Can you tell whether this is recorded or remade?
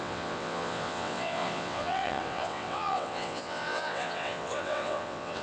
remade